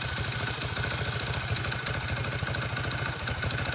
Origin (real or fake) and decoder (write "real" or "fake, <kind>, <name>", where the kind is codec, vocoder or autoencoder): real